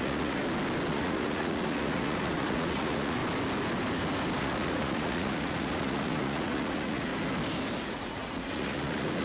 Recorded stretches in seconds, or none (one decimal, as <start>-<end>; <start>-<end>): 0.4-0.9; 3.2-4.4; 7.1-7.8